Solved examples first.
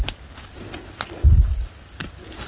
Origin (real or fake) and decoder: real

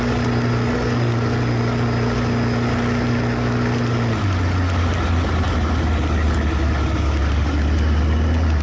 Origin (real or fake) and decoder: real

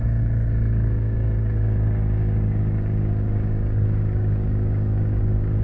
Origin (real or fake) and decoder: fake, codec, DAC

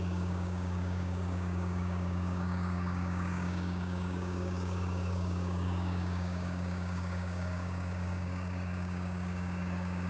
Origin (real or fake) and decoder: fake, codec, DAC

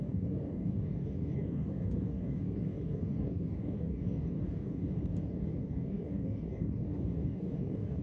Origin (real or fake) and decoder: fake, codec, DAC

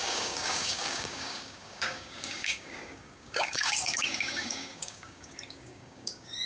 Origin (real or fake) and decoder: fake, codec, DAC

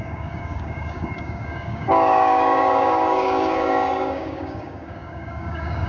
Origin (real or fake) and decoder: fake, codec, DAC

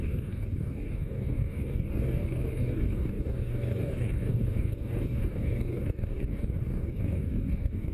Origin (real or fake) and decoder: fake, codec, DAC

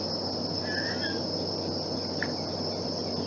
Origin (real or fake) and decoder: real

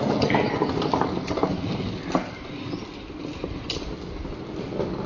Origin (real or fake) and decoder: real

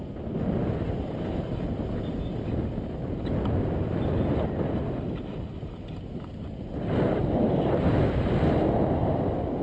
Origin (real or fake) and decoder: real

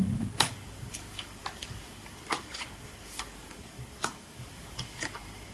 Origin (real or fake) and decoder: fake, codec, DAC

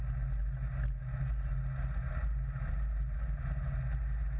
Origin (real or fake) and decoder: real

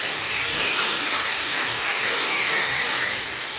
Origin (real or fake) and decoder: fake, codec, DAC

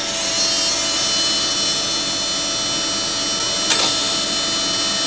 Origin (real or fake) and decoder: real